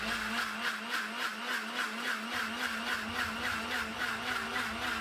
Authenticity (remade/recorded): recorded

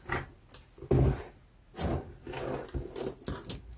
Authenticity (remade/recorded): recorded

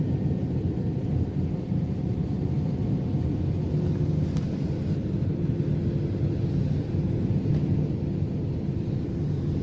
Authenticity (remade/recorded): recorded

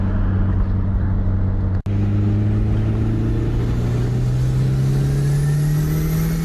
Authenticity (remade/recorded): recorded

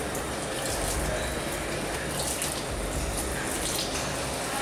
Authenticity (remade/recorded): recorded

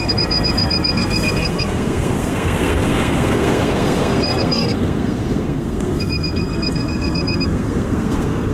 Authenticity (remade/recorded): remade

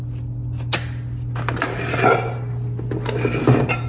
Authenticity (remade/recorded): recorded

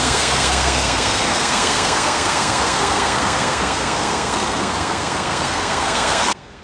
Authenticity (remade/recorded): remade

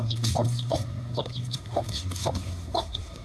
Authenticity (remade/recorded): remade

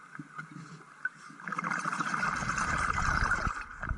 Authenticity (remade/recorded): recorded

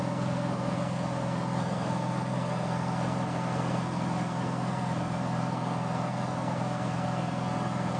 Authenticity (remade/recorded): remade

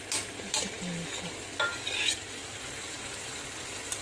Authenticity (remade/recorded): recorded